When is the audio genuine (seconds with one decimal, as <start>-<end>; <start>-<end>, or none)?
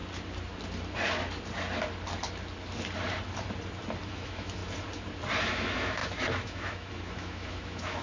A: 0.0-4.1; 4.6-5.4